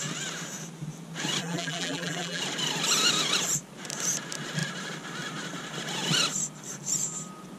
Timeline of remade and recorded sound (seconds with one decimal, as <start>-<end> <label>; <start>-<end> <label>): 0.0-1.4 recorded; 1.4-2.4 remade; 2.4-7.6 recorded